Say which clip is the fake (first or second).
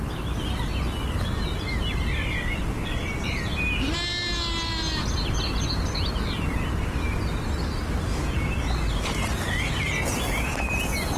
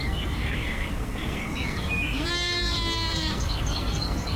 second